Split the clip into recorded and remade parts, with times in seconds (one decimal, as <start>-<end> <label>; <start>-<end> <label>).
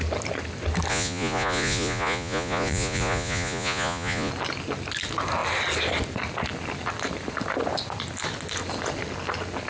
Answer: 0.0-0.9 recorded; 0.9-4.3 remade; 4.3-9.7 recorded